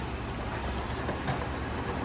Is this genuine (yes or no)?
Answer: yes